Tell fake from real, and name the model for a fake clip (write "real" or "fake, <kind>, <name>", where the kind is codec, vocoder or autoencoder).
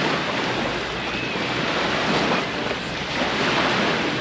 real